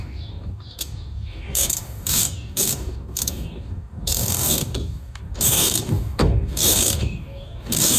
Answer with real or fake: fake